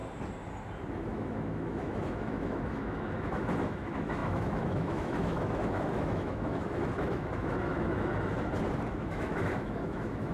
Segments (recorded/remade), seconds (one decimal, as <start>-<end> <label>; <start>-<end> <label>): 0.0-0.9 recorded; 0.9-8.1 remade; 8.1-8.9 recorded; 8.9-10.3 remade